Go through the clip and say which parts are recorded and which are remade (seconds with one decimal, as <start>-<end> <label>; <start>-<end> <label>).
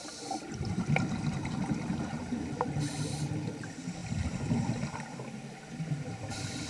0.0-6.7 recorded